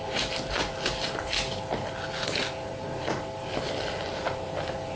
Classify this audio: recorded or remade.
recorded